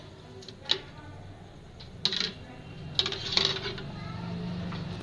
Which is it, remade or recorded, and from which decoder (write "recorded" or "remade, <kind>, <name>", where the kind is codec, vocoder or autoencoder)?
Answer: recorded